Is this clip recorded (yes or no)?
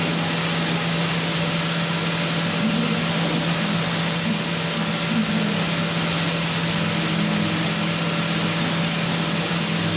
yes